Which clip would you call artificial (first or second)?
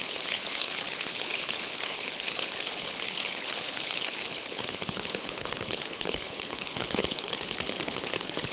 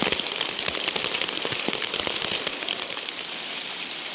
first